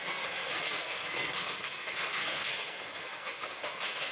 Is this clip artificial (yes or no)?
yes